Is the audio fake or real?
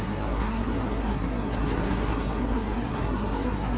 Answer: fake